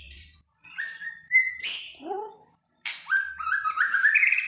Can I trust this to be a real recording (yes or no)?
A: no